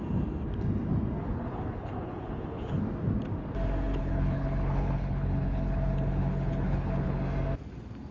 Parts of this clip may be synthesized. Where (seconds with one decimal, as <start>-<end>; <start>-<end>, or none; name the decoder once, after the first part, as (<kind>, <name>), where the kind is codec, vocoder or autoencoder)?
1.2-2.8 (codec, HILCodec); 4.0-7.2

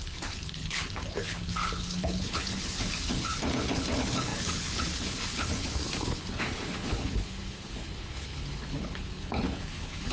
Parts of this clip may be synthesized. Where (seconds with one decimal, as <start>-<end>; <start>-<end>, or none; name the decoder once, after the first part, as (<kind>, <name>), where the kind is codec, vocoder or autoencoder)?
0.0-10.1 (codec, HILCodec)

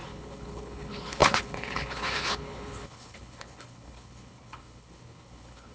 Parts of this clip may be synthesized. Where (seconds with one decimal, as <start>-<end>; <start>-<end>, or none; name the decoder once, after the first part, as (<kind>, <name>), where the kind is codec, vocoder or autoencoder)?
0.0-5.7 (codec, HILCodec)

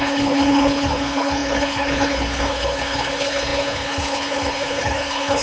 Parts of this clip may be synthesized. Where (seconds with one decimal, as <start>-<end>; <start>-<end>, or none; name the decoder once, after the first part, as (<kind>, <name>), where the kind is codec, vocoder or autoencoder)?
0.0-5.4 (codec, HILCodec)

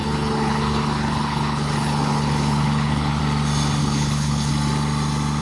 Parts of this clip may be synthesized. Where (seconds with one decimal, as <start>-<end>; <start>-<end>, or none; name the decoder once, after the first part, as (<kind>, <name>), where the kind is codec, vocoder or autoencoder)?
0.0-3.2 (codec, HILCodec); 3.8-4.5

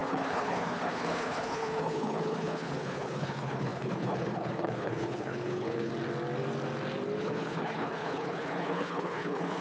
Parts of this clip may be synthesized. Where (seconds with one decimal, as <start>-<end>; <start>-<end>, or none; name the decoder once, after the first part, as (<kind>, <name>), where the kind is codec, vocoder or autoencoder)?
0.0-5.9 (codec, HILCodec); 7.2-9.6